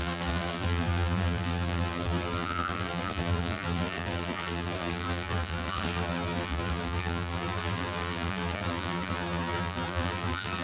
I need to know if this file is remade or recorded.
remade